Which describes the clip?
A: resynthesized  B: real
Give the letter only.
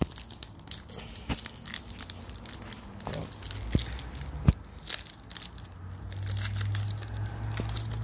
B